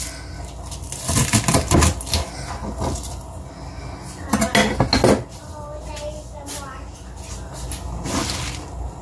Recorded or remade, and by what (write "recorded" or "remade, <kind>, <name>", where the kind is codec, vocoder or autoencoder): recorded